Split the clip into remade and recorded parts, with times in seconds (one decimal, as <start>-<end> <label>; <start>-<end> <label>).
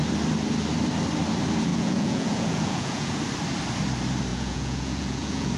0.0-1.7 recorded; 1.7-3.2 remade; 3.2-4.3 recorded; 4.3-5.6 remade